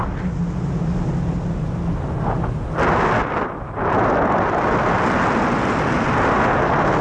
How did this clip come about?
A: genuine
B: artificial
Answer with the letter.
A